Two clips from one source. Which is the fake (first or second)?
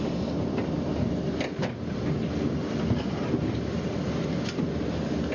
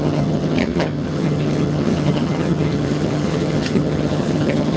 second